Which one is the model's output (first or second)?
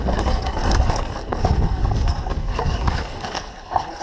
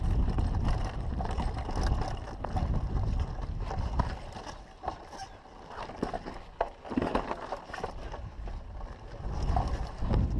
first